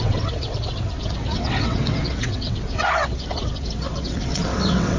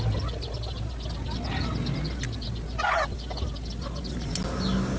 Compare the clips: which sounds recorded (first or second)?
second